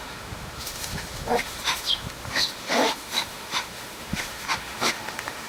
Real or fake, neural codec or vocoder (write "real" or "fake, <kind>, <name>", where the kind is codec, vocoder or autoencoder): fake, autoencoder, DAC-VAE